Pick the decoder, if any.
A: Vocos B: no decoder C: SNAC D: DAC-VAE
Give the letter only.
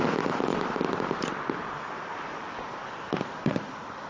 B